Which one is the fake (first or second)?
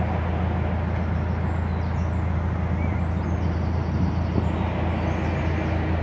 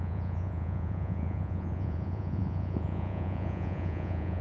second